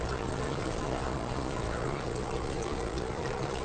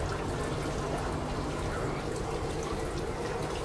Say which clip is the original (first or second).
second